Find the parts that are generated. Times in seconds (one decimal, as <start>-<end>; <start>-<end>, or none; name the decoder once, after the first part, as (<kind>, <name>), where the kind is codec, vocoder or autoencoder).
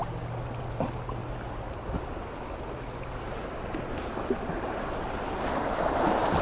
none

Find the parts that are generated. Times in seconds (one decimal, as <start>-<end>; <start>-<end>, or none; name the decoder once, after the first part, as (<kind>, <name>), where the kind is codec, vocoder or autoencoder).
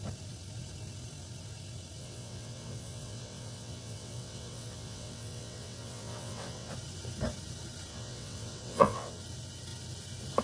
2.0-6.7 (vocoder, WaveNeXt); 7.9-9.2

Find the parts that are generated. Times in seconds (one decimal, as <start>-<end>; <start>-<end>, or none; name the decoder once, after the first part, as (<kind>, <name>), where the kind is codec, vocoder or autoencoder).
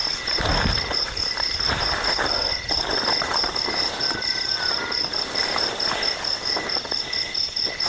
none